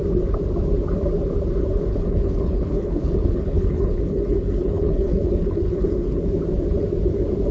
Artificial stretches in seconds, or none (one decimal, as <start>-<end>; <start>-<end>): 1.9-6.3